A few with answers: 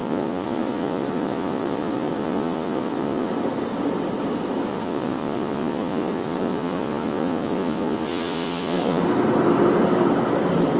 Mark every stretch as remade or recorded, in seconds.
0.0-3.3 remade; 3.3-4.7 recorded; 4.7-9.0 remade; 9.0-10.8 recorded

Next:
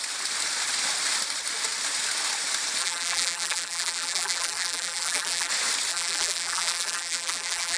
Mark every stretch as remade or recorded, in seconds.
0.0-2.8 recorded; 2.8-5.5 remade; 5.5-5.9 recorded; 5.9-7.8 remade

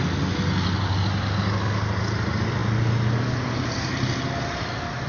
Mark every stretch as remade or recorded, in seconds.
0.0-5.1 recorded

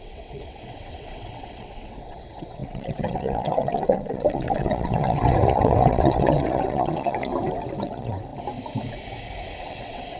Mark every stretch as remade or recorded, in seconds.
0.0-7.3 remade; 7.3-7.8 recorded; 7.8-8.3 remade; 8.3-9.6 recorded; 9.6-10.2 remade